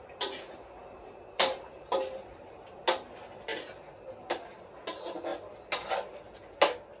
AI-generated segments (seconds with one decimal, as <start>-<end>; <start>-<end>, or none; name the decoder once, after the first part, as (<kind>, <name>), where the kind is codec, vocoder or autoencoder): 0.8-2.8 (vocoder, BigVGAN v2)